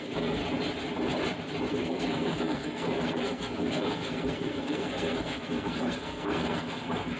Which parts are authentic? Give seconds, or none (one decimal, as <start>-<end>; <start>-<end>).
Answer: 0.4-1.7